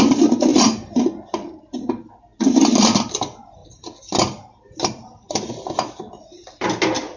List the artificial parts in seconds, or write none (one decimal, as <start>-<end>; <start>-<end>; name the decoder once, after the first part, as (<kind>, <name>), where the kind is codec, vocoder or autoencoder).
none